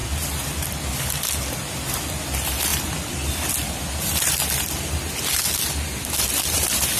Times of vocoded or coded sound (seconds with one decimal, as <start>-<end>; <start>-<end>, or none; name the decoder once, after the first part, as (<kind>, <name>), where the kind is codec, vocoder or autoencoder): 1.5-7.0 (vocoder, BigVGAN v2)